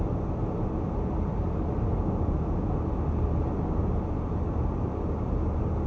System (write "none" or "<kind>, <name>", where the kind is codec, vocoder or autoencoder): none